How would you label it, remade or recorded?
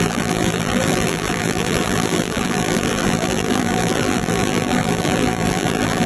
remade